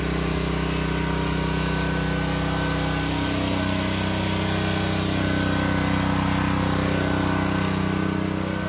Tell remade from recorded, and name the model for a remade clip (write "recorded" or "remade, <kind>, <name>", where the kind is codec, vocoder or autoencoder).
recorded